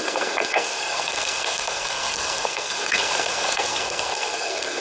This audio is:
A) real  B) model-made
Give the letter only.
B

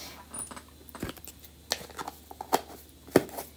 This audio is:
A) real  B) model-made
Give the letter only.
A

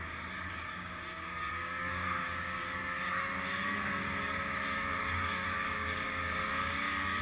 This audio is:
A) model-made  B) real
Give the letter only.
A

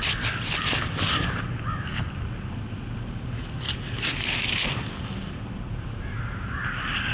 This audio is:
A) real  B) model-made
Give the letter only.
A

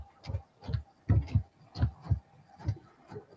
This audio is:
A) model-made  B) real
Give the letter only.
B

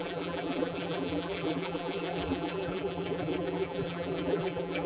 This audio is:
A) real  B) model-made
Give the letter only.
B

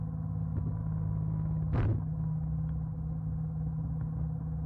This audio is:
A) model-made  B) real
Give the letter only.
B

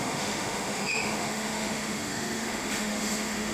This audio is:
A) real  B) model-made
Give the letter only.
B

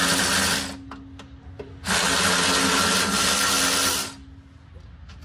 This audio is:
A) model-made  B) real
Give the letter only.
B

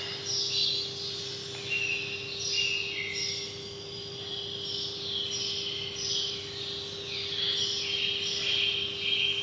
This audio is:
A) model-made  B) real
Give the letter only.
B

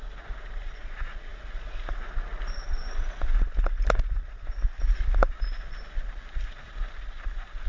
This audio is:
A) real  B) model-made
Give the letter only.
A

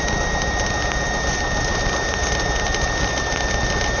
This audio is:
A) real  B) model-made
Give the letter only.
A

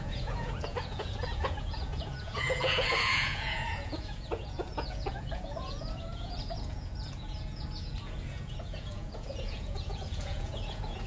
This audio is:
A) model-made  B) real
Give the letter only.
A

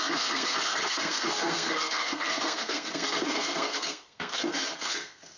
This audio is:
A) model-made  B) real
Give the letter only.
A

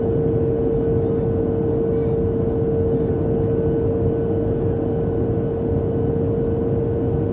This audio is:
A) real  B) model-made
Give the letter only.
A